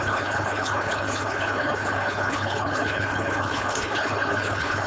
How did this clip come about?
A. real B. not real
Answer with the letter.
B